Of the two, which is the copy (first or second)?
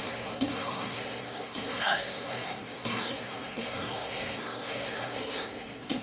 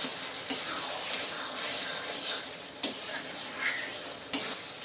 first